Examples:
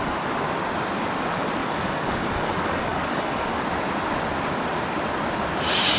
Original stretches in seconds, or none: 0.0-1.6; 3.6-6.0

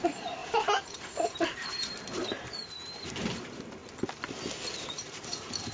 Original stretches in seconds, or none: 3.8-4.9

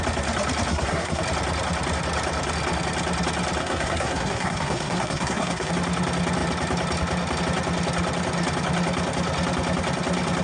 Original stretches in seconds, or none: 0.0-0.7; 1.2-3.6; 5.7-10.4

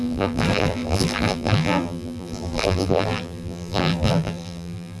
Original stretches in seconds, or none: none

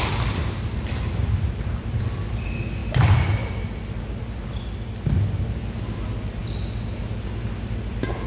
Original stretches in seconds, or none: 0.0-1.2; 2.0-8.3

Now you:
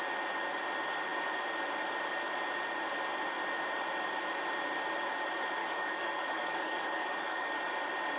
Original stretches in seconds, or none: 0.0-5.6; 7.7-8.2

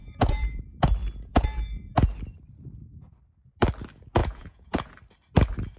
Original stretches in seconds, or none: 0.6-1.0; 1.9-4.2; 4.9-5.8